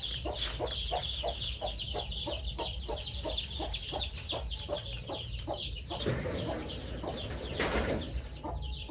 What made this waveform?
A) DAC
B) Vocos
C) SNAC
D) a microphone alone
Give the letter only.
D